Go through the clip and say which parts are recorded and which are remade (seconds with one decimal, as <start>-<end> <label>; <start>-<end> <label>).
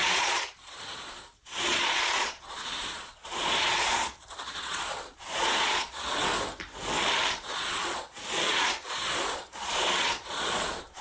0.0-6.3 remade; 6.3-7.3 recorded; 7.3-11.0 remade